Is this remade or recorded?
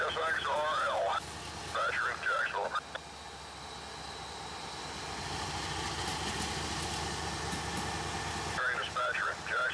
recorded